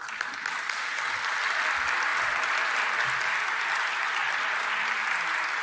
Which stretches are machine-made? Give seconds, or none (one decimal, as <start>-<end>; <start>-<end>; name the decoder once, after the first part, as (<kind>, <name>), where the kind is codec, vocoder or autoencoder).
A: none